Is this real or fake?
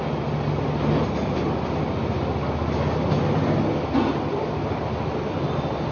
real